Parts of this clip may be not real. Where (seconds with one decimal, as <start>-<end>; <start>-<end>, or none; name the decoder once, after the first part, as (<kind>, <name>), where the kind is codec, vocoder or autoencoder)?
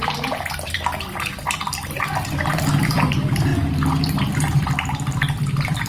0.0-3.5 (vocoder, BigVGAN v2); 4.3-5.9